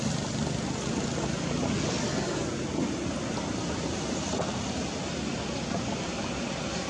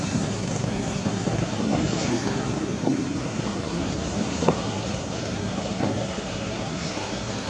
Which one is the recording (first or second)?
first